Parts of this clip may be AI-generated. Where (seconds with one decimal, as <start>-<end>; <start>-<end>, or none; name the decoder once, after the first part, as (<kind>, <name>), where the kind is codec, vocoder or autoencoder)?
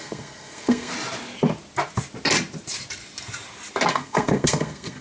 0.0-0.9 (codec, SNAC); 3.9-5.0